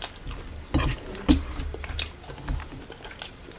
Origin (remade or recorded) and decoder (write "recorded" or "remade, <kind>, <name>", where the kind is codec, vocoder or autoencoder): recorded